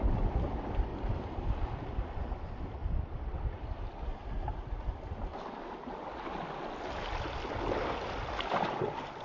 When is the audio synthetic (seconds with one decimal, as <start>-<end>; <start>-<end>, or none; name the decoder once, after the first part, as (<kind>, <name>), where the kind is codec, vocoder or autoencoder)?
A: none